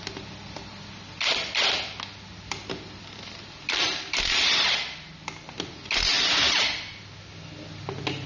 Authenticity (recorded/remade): recorded